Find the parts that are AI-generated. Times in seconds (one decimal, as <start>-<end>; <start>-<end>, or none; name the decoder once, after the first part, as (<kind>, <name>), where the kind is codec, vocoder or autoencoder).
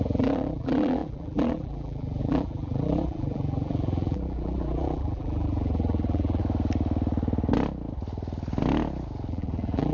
0.0-6.4 (vocoder, BigVGAN v2); 9.3-9.9